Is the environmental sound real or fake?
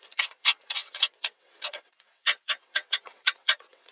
fake